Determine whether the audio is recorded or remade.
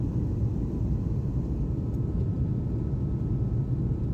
recorded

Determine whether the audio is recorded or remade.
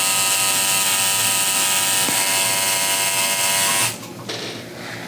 recorded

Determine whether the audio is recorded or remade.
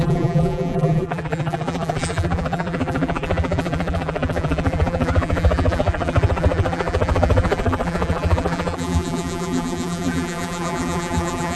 remade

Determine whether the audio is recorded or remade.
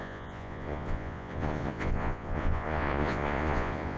remade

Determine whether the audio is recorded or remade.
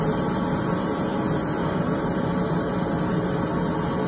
recorded